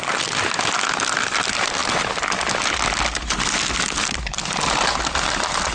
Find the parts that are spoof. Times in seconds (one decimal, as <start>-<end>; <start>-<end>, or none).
none